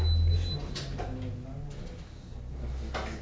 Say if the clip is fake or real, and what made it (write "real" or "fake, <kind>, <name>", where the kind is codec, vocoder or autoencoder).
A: real